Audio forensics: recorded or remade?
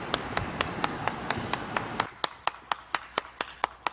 recorded